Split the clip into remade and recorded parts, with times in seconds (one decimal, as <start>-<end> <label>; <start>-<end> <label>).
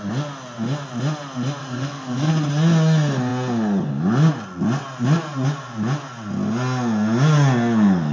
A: 0.0-1.6 recorded; 1.6-2.3 remade; 2.3-8.1 recorded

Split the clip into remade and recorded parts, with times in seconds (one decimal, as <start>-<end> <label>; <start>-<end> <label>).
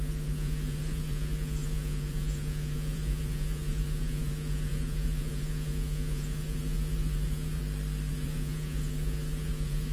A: 0.0-7.6 remade; 7.6-8.1 recorded; 8.1-9.9 remade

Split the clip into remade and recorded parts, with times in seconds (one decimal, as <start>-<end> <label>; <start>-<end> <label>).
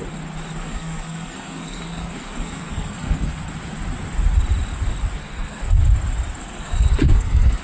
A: 0.0-0.6 recorded; 0.6-3.5 remade; 3.5-5.2 recorded; 5.2-5.8 remade; 5.8-6.4 recorded; 6.4-7.6 remade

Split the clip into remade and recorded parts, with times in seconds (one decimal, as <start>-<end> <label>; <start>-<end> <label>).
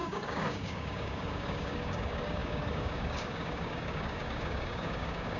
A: 0.0-5.4 remade